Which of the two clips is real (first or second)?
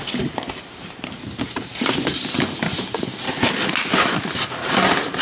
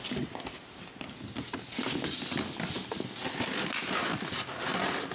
second